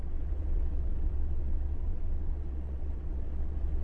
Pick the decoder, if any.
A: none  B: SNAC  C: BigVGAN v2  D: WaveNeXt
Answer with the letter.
D